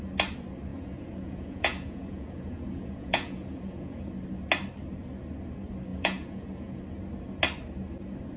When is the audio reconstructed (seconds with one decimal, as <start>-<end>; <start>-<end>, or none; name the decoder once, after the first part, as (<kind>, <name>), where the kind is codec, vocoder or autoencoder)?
0.7-4.1 (vocoder, Vocos); 5.9-6.8